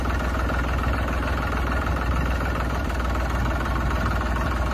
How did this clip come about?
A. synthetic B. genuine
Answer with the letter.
B